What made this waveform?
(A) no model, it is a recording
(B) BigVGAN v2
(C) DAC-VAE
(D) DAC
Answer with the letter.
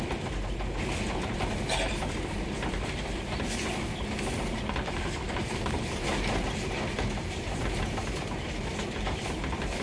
B